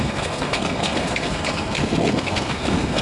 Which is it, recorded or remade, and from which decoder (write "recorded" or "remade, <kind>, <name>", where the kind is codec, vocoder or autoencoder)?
remade, codec, SNAC